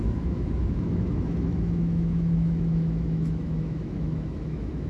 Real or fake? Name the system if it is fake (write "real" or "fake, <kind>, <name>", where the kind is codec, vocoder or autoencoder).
fake, autoencoder, DAC-VAE